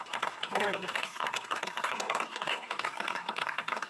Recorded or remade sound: remade